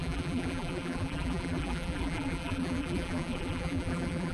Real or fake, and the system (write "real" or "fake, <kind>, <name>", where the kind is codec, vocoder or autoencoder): fake, vocoder, BigVGAN v2